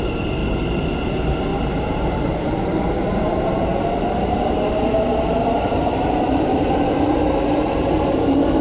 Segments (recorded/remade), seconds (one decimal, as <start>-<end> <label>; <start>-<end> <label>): 0.0-1.5 recorded; 1.5-4.7 remade; 4.7-5.7 recorded; 5.7-8.6 remade